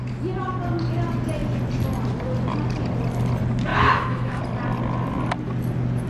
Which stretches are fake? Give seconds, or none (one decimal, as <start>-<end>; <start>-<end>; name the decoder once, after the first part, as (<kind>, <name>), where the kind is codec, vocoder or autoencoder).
3.7-4.4 (autoencoder, DAC-VAE)